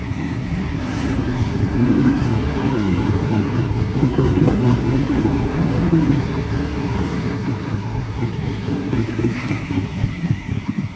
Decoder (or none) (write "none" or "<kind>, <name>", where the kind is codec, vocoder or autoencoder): codec, SNAC